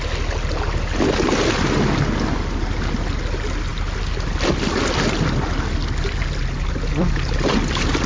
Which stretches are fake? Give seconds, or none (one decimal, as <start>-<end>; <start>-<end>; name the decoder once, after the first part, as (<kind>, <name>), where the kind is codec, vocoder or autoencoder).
none